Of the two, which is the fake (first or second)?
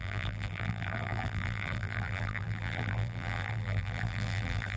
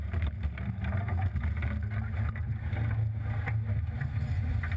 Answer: first